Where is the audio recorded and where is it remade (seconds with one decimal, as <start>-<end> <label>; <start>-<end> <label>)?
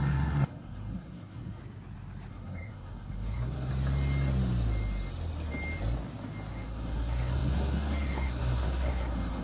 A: 0.0-1.6 remade; 1.6-2.3 recorded; 2.3-3.7 remade; 3.7-6.5 recorded; 6.5-9.4 remade